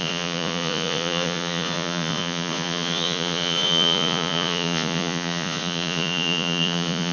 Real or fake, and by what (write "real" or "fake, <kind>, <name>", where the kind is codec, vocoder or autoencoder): fake, vocoder, Vocos